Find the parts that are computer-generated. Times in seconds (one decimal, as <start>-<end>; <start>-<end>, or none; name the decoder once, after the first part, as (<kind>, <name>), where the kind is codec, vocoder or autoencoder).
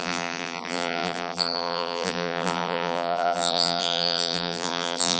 0.0-5.2 (vocoder, BigVGAN v2)